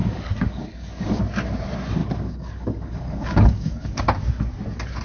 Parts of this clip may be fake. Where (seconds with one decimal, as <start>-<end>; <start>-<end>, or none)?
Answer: 0.0-1.2; 2.0-4.0